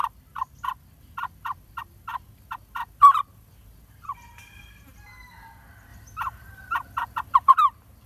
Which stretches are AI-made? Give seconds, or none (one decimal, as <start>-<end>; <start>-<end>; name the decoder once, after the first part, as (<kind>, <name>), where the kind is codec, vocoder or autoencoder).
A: 0.0-1.0 (vocoder, BigVGAN v2)